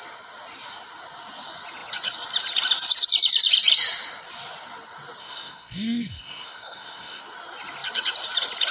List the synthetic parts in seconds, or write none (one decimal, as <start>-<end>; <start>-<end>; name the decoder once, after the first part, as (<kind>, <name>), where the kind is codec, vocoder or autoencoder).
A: 5.2-7.2 (codec, SNAC)